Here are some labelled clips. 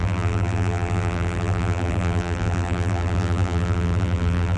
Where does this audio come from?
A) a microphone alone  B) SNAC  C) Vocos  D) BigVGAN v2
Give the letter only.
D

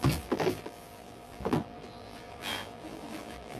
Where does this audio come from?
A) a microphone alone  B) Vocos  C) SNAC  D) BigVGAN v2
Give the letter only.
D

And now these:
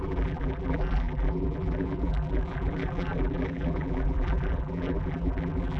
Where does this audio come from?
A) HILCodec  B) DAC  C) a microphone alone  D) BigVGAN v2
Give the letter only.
D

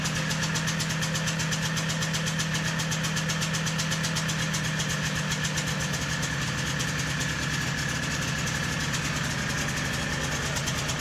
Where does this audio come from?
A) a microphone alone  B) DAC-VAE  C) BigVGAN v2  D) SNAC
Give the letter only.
A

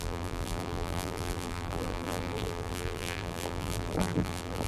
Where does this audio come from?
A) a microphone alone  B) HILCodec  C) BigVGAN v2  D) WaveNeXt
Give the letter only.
C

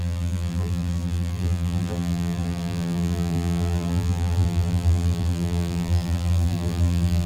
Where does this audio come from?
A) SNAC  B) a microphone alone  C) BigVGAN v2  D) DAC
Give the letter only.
C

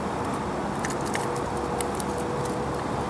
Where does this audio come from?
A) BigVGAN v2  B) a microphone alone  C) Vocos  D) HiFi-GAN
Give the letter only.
B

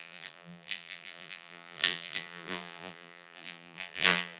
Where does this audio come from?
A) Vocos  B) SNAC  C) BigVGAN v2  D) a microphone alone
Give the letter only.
C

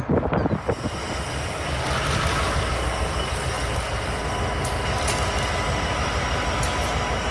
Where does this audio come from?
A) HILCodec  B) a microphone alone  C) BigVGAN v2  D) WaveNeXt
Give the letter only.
B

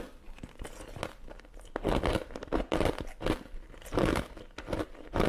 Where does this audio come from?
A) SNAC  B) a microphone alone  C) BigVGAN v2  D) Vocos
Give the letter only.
B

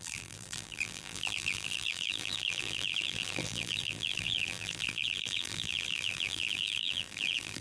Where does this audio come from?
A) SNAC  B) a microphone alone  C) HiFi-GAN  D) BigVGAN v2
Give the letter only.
D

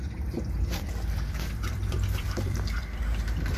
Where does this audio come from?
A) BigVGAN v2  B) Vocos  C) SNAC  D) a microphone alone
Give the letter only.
A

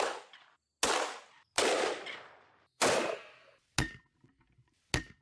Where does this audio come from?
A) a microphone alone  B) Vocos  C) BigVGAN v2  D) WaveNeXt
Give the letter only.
A